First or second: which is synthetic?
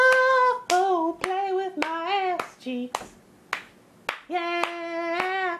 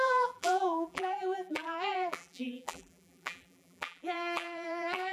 second